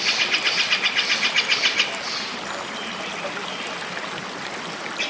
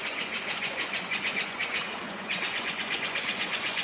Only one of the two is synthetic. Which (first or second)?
second